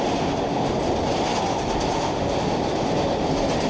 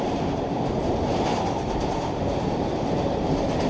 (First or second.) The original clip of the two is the first